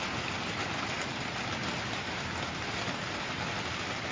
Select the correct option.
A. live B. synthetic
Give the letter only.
A